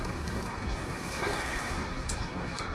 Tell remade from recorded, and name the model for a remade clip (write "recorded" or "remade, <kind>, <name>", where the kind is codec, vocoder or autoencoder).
remade, codec, SNAC